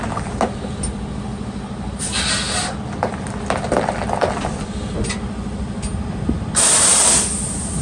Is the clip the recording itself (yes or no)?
yes